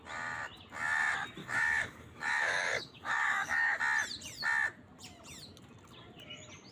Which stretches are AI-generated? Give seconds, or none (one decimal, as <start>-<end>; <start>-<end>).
1.4-3.8